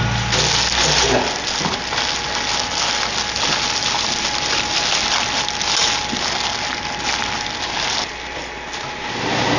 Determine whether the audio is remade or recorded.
recorded